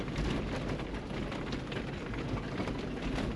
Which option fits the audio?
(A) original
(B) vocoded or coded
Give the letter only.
A